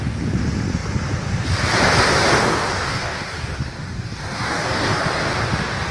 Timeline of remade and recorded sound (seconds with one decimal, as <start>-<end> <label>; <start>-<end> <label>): 0.0-2.4 recorded; 2.4-5.0 remade; 5.0-5.9 recorded

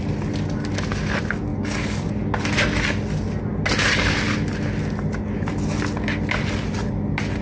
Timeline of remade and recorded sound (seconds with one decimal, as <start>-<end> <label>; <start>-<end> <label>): 0.0-1.5 recorded; 1.5-2.1 remade; 2.1-7.4 recorded

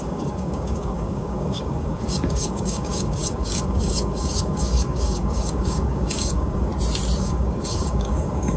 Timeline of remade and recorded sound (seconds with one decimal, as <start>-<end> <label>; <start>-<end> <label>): 0.0-6.7 remade; 6.7-7.2 recorded; 7.2-8.6 remade

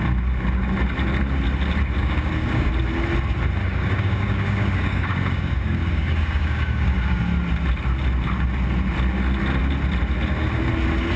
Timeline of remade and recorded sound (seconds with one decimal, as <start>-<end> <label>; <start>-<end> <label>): 0.0-2.0 recorded; 2.0-2.7 remade; 2.7-3.6 recorded; 3.6-7.2 remade; 7.2-11.2 recorded

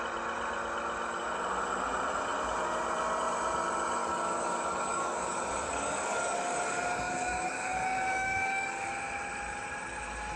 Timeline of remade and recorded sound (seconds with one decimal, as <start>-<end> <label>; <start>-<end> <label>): 0.0-4.0 recorded; 4.0-8.9 remade; 8.9-10.4 recorded

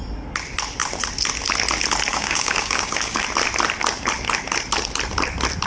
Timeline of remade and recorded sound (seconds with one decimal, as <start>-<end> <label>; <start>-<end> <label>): 0.0-2.1 recorded; 2.1-3.2 remade; 3.2-5.7 recorded

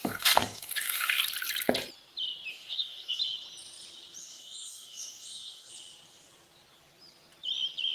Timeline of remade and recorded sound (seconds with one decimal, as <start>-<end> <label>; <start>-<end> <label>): 0.0-1.2 remade; 1.2-2.5 recorded; 2.5-3.2 remade; 3.2-4.2 recorded; 4.2-5.7 remade; 5.7-7.9 recorded